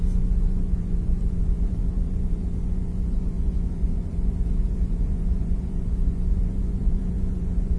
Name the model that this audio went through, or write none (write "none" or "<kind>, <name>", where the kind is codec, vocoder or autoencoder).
vocoder, Vocos